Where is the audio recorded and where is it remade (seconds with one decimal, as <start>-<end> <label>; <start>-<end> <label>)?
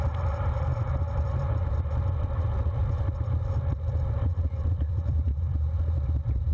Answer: 0.0-6.5 recorded